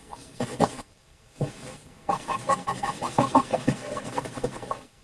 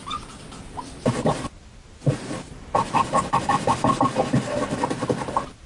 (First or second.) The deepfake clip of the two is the first